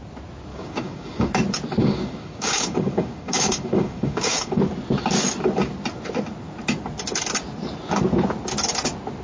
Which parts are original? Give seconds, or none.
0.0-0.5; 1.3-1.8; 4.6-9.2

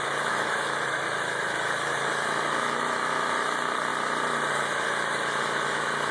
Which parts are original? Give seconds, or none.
3.9-4.5

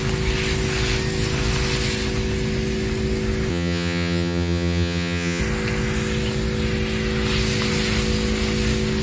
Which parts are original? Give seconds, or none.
0.0-3.5; 5.4-9.0